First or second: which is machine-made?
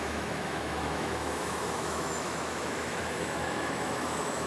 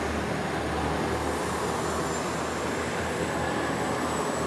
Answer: first